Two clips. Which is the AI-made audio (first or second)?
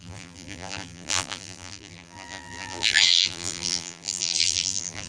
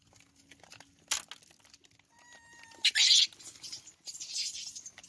first